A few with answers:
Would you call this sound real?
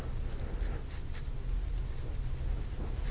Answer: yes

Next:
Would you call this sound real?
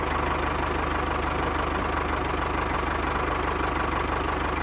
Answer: yes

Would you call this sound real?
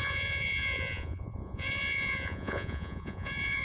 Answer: no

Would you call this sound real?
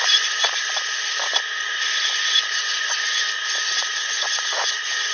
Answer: no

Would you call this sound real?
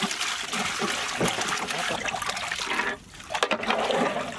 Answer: yes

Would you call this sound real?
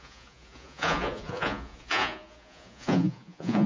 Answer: no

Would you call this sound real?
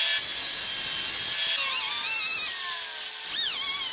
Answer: yes